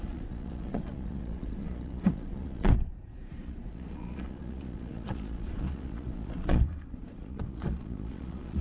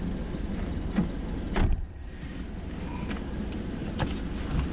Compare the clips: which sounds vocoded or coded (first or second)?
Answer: first